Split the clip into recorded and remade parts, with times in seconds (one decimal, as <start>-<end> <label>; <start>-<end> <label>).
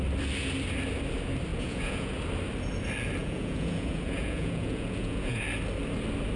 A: 0.0-1.5 recorded; 1.5-2.2 remade; 2.2-3.2 recorded; 3.2-5.4 remade; 5.4-6.4 recorded